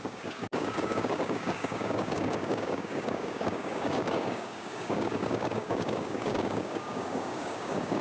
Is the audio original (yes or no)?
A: no